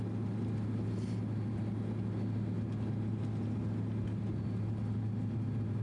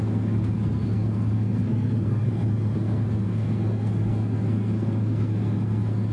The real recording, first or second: first